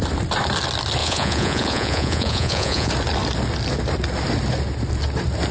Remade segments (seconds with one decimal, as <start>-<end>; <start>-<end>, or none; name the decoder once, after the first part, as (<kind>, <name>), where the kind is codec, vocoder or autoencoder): 1.0-2.9 (vocoder, Vocos)